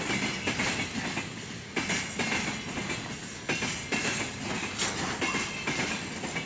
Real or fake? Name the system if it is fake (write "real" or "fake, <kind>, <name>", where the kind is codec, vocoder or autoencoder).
real